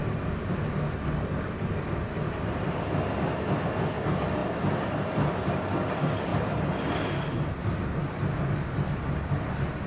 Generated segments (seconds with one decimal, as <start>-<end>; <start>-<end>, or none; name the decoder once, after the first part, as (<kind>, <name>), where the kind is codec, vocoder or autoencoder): none